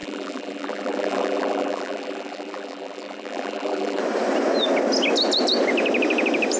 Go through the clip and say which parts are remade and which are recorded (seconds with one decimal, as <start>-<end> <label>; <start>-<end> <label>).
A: 0.0-4.0 remade; 4.0-6.6 recorded